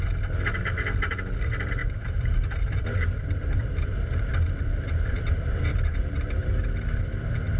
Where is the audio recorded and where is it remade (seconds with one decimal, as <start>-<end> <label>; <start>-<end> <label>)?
0.0-1.8 recorded; 1.8-6.4 remade; 6.4-7.6 recorded